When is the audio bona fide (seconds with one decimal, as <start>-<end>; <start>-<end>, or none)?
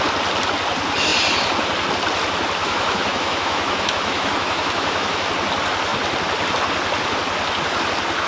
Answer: 0.0-2.6; 5.3-8.3